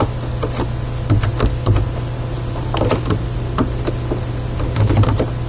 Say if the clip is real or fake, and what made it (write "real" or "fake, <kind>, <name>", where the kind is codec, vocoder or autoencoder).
real